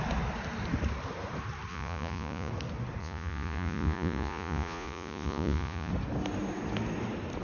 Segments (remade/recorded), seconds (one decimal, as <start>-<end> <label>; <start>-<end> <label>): 0.0-1.7 recorded; 1.7-2.5 remade; 2.5-3.0 recorded; 3.0-5.9 remade; 5.9-7.4 recorded